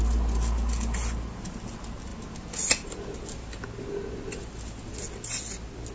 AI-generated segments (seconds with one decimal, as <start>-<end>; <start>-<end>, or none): none